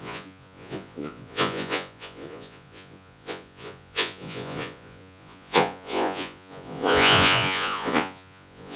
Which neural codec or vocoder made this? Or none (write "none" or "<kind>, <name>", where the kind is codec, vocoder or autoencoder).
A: vocoder, Vocos